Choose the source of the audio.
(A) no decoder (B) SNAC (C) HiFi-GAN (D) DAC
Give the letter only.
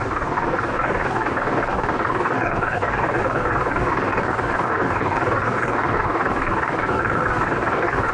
D